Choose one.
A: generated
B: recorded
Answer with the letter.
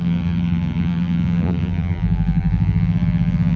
A